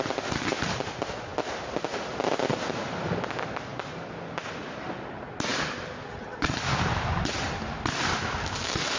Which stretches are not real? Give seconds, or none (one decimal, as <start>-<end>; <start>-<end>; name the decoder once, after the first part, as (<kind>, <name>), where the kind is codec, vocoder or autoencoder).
none